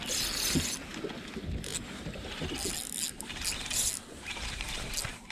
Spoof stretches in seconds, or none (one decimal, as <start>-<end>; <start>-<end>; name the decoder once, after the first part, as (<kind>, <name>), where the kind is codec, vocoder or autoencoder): none